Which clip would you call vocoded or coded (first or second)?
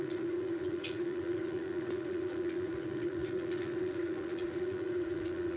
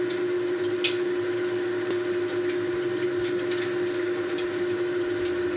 first